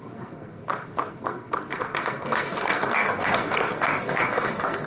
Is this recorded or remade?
remade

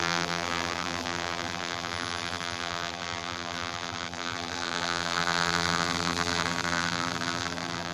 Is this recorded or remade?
remade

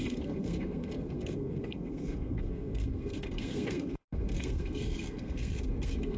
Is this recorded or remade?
remade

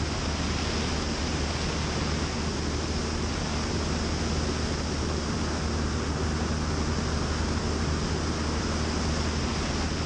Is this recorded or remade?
recorded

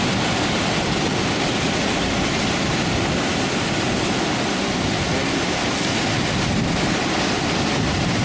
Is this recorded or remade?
recorded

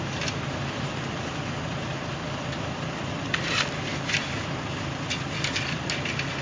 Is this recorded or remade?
recorded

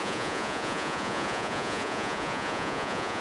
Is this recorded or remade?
remade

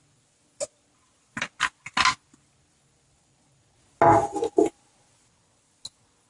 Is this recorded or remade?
recorded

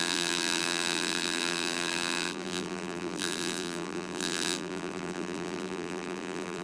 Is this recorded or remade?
remade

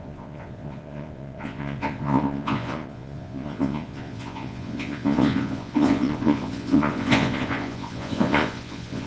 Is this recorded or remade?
remade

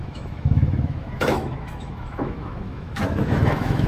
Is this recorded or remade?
remade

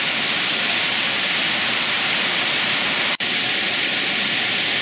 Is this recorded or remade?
remade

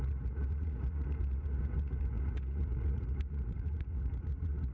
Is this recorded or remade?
remade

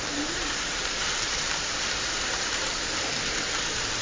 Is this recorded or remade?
remade